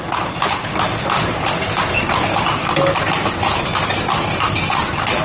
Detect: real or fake real